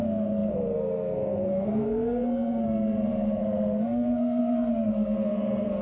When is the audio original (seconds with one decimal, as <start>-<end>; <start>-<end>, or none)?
none

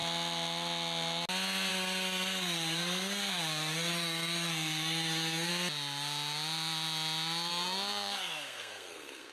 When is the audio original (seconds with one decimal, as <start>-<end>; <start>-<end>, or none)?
0.0-1.7; 5.5-7.5

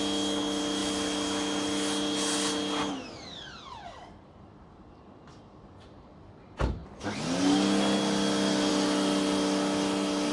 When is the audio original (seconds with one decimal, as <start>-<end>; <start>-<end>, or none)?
0.0-10.3

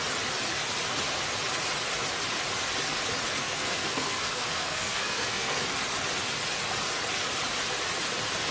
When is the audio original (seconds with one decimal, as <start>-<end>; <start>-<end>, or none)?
0.0-3.4; 5.6-8.5